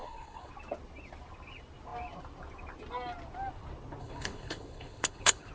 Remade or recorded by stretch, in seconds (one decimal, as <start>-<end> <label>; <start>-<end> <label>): 0.0-0.5 remade; 0.5-4.0 recorded; 4.0-5.5 remade